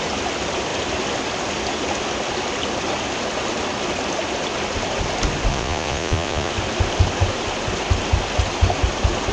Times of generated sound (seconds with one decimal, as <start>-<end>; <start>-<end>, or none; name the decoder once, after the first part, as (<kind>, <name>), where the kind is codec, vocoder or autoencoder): 5.5-6.5 (vocoder, Vocos)